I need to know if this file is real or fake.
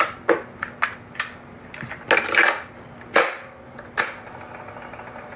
real